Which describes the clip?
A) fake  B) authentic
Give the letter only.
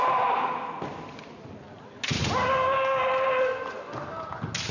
B